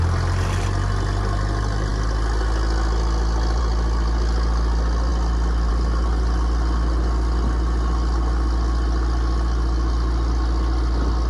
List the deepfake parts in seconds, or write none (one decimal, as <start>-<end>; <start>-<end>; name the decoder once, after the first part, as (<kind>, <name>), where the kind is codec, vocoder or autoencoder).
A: none